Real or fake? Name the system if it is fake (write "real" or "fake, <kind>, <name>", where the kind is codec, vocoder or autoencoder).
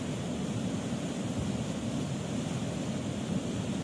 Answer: real